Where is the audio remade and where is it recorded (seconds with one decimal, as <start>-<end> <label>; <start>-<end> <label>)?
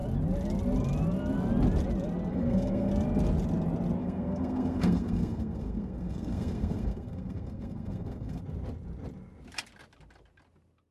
0.0-2.3 recorded; 2.3-2.9 remade; 2.9-4.0 recorded; 4.0-8.4 remade; 8.4-10.9 recorded